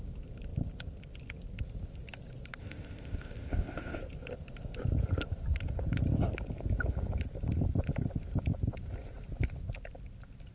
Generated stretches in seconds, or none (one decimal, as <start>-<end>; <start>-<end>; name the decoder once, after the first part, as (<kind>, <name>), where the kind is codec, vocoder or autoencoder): 2.6-4.0 (codec, ZipCodec)